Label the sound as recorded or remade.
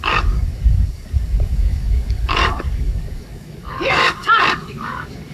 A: remade